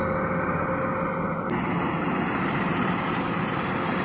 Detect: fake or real real